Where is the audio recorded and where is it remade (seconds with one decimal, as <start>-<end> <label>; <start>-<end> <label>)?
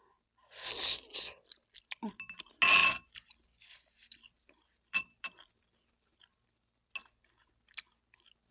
0.0-2.8 recorded; 2.8-6.9 remade; 6.9-8.5 recorded